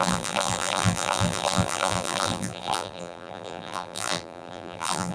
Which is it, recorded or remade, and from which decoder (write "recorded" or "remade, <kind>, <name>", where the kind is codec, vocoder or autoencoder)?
remade, vocoder, BigVGAN v2